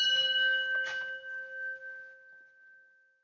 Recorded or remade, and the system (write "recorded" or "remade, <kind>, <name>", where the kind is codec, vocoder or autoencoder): recorded